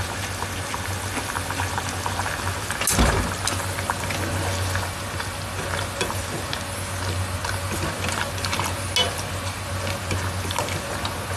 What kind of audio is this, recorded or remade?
recorded